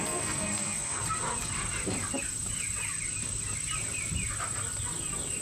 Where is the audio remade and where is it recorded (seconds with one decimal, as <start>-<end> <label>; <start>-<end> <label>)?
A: 0.0-1.0 remade; 1.0-5.4 recorded